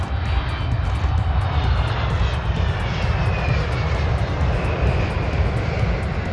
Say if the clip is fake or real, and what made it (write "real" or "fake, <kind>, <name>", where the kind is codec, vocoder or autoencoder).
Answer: real